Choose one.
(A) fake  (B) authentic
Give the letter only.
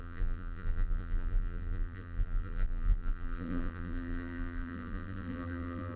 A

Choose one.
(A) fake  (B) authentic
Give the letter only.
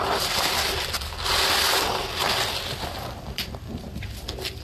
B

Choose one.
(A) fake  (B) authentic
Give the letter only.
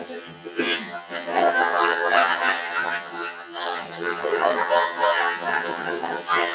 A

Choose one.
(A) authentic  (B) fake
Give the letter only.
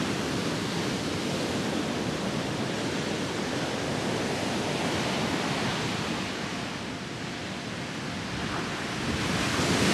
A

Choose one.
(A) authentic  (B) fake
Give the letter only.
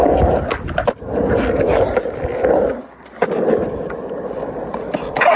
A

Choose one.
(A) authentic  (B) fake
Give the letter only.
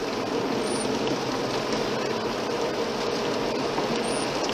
A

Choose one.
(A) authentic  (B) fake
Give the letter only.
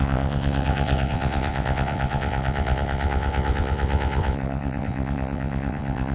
B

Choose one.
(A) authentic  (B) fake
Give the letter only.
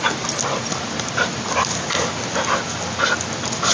A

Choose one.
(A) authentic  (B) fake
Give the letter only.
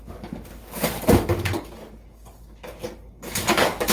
B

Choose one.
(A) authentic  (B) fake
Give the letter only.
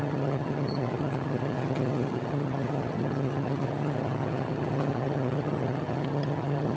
B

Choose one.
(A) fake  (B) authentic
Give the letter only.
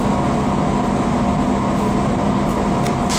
B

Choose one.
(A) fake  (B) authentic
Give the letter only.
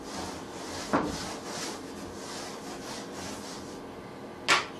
B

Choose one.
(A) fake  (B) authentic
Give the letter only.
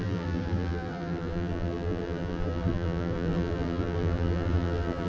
A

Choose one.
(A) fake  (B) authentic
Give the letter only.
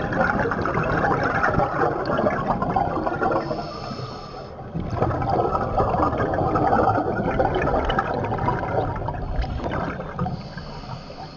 B